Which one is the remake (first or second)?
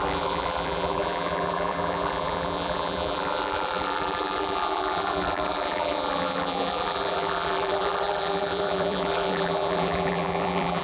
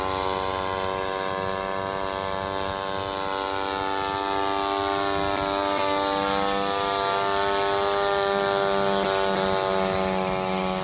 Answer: first